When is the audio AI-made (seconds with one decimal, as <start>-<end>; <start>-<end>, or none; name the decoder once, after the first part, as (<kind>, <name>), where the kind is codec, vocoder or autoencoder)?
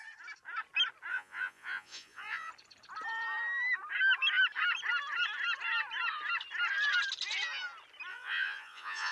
1.1-2.5 (vocoder, Vocos); 8.1-9.1